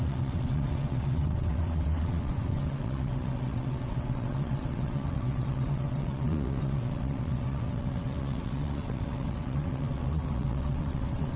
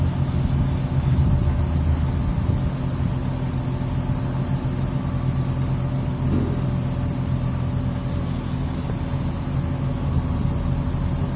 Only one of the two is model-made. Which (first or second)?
first